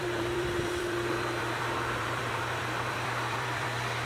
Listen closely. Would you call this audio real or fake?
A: fake